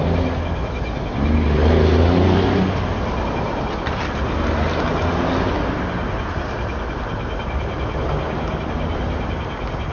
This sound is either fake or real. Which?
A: real